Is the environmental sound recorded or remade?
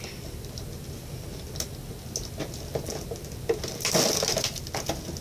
recorded